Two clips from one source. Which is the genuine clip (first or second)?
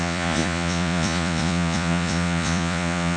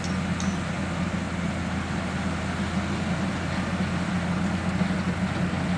second